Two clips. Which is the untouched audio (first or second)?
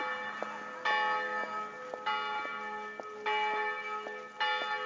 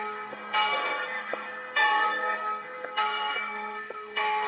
first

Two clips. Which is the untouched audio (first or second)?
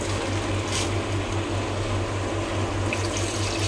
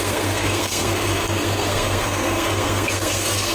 first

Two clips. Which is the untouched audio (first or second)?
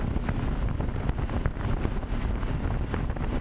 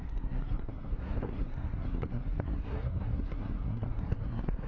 first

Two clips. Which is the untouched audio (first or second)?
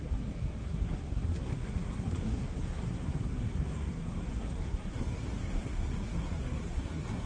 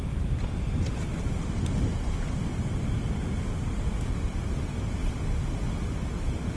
second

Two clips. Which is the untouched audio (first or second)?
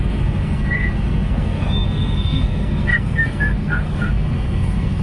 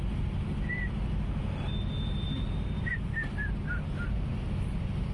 second